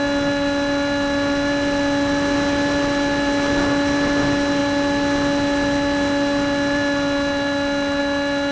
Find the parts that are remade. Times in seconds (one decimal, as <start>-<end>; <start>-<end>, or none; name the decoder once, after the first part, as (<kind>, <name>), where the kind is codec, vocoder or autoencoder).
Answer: none